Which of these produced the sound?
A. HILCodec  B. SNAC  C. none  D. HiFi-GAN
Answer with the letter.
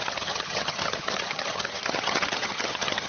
D